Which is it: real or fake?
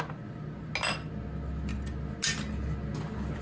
real